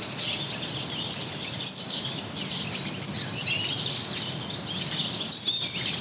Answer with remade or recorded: recorded